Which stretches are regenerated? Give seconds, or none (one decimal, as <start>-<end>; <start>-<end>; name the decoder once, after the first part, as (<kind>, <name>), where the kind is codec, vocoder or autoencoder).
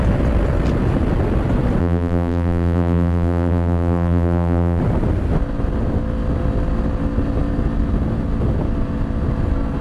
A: 1.8-4.8 (vocoder, BigVGAN v2)